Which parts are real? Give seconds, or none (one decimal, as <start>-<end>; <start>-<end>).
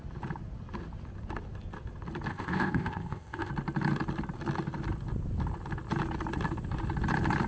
0.0-2.3; 3.5-7.5